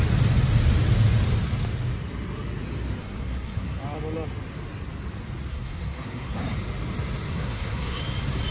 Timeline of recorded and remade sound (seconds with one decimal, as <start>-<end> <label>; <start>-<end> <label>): 0.0-3.0 recorded; 3.0-3.8 remade; 3.8-5.5 recorded; 5.5-6.4 remade; 6.4-7.3 recorded; 7.3-8.0 remade; 8.0-8.5 recorded